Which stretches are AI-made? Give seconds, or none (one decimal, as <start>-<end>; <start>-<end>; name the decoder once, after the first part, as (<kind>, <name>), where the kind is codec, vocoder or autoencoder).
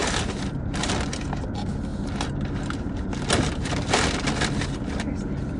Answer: 0.0-1.2 (vocoder, BigVGAN v2); 1.9-5.6